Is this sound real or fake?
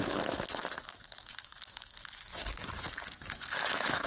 fake